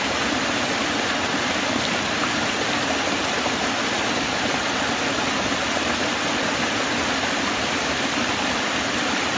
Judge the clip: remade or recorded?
recorded